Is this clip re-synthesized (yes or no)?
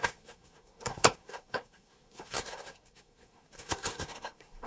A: yes